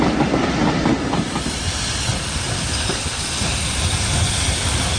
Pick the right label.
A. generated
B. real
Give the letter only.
B